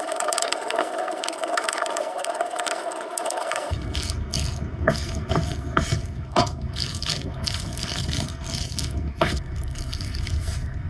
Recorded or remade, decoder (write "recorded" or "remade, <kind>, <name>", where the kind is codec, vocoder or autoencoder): remade, codec, SNAC